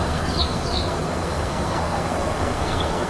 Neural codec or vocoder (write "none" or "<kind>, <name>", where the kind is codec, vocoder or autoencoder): codec, SNAC